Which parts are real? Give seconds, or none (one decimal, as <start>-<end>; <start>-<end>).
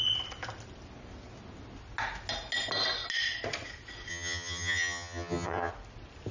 0.0-4.1; 5.7-6.3